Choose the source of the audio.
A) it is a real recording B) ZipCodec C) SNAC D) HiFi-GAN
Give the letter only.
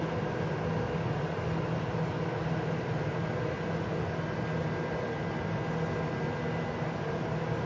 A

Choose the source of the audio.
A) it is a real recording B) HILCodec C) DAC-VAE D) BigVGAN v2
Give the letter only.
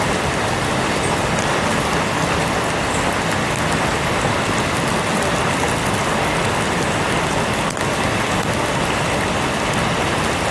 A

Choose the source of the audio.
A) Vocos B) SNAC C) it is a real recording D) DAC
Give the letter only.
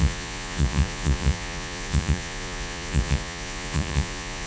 A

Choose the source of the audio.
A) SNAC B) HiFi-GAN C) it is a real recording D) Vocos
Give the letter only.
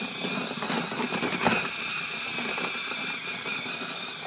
C